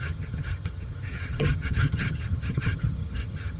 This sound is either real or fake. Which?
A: fake